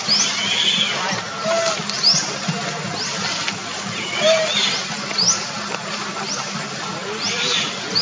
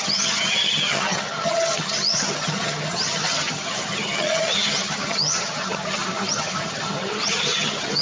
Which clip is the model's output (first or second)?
second